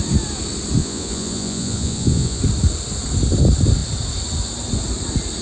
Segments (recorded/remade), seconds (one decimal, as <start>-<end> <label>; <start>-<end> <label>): 0.0-0.8 recorded; 0.8-2.4 remade; 2.4-5.4 recorded